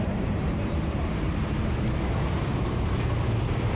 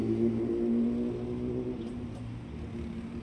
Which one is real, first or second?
second